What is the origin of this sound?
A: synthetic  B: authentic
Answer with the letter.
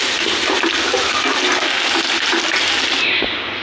B